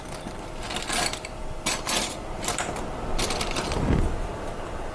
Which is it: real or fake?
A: real